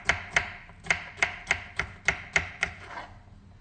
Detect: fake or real real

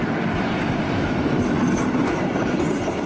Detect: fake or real real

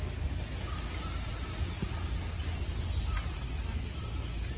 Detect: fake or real real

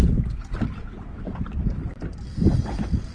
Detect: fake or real real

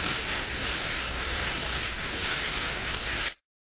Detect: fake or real fake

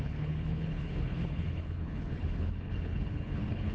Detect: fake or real fake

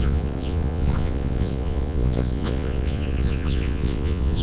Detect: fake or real fake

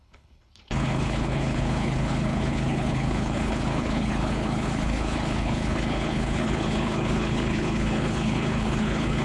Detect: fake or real fake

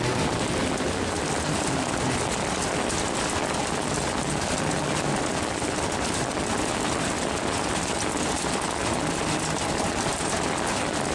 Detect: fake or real real